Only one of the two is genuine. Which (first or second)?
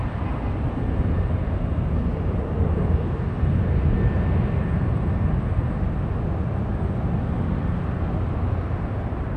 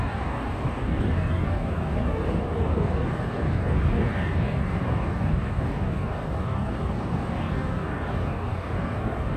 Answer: first